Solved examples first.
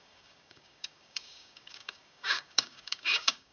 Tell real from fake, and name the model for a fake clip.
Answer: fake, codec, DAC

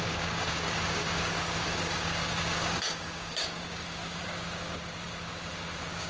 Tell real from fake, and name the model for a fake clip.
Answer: fake, codec, DAC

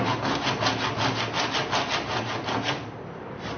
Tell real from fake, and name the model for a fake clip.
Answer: real